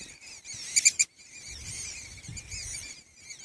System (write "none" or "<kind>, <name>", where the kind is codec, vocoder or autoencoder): vocoder, BigVGAN v2